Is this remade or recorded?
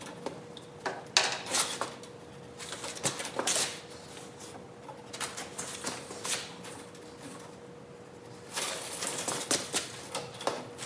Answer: recorded